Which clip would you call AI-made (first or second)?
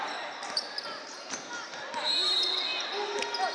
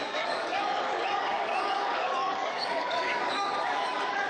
second